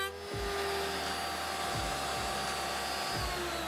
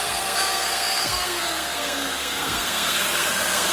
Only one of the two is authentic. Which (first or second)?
first